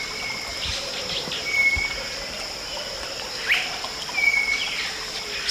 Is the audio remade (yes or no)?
no